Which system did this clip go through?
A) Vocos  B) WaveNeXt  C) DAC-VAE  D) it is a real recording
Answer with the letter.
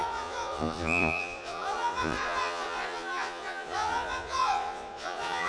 A